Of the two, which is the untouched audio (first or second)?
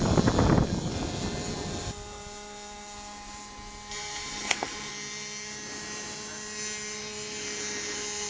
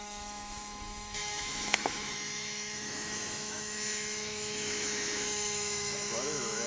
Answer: first